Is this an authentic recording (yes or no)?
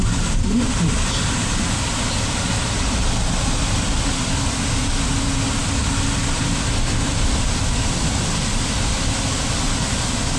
yes